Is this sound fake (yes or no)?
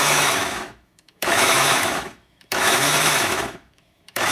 yes